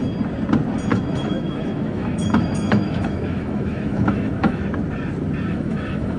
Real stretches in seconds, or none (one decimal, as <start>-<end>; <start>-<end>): 0.0-0.9; 4.6-5.5

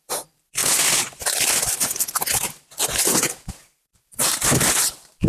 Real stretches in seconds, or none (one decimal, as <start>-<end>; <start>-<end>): 0.6-3.7

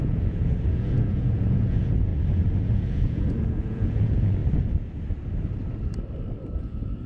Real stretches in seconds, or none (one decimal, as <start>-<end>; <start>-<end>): 2.1-2.7; 4.4-6.5

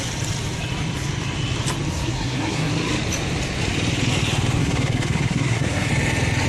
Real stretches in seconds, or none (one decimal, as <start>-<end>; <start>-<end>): 0.0-1.9; 2.7-4.6; 5.9-6.5

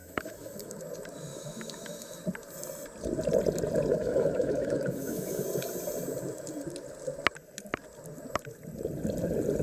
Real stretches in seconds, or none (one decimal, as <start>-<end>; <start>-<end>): 0.8-1.3; 2.2-3.9; 5.4-9.6

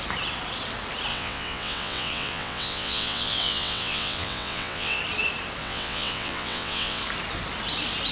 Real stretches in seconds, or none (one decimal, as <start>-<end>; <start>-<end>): 0.0-1.1; 5.0-5.6; 7.0-8.1

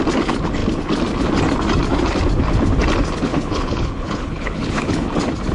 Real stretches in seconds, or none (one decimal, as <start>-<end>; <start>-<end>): 0.0-3.3; 5.1-5.5